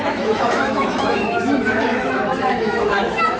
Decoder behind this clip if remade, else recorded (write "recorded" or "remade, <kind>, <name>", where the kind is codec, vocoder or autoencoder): remade, autoencoder, DAC-VAE